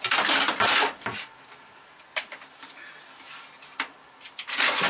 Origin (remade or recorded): recorded